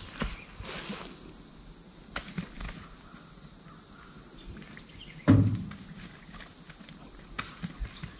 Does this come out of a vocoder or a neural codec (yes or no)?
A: no